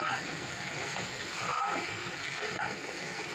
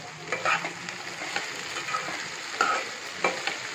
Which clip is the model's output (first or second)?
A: first